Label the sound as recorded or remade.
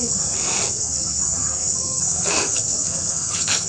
remade